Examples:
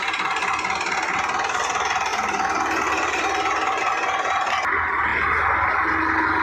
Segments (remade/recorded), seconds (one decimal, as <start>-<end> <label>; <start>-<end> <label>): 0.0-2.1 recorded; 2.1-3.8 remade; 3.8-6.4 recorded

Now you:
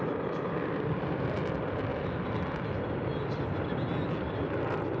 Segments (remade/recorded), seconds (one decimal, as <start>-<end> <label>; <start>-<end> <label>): 0.0-1.9 remade; 1.9-4.2 recorded; 4.2-5.0 remade

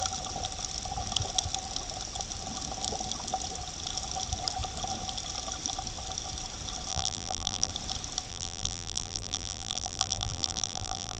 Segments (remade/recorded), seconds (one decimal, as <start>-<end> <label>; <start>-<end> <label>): 0.0-6.9 recorded; 6.9-7.7 remade; 7.7-8.3 recorded; 8.3-11.2 remade